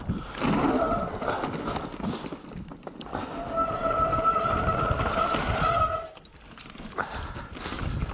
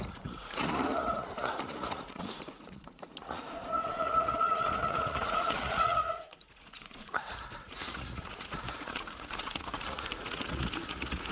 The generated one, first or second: second